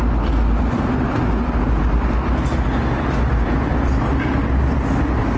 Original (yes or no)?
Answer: yes